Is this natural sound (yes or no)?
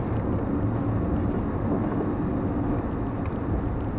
yes